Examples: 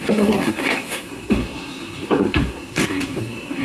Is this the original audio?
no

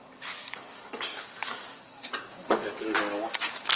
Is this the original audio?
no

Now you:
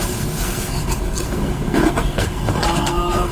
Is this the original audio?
no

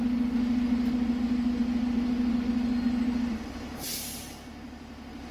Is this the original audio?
yes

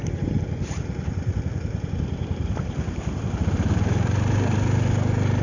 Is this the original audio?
yes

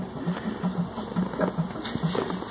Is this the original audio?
yes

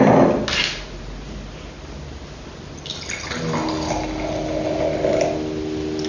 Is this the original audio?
yes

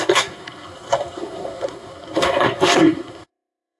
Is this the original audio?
no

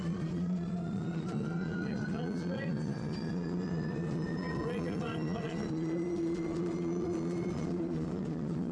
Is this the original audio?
no